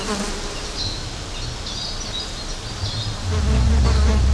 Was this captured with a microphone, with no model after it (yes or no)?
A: yes